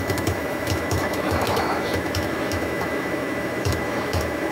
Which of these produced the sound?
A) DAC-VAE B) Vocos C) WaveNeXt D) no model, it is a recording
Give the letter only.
A